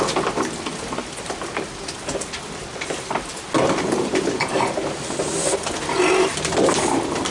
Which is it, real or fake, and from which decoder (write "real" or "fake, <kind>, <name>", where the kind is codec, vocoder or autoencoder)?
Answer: real